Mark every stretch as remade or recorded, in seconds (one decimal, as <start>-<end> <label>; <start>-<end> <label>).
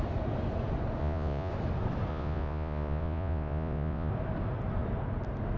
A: 0.0-1.0 recorded; 1.0-1.5 remade; 1.5-2.1 recorded; 2.1-4.1 remade; 4.1-5.6 recorded